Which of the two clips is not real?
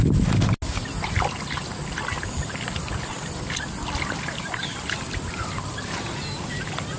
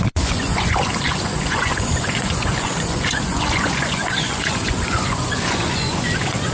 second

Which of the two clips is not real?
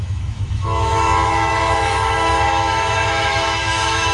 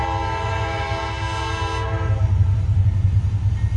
first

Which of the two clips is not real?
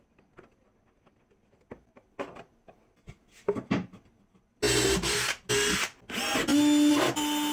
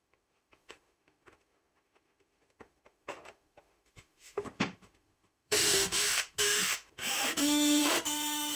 second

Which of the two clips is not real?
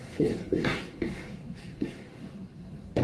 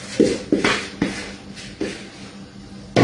first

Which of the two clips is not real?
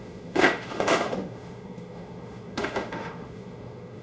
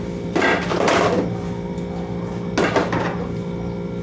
first